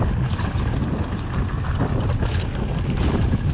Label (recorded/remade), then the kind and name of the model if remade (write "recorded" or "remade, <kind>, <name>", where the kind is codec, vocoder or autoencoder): recorded